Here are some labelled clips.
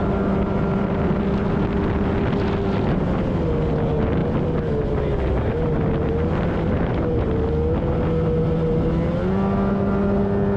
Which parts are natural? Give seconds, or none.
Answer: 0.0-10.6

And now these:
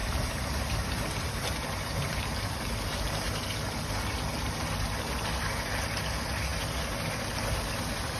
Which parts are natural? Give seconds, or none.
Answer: 2.6-8.2